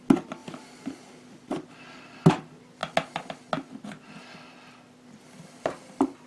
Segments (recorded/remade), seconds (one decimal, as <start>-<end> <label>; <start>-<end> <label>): 0.0-6.3 recorded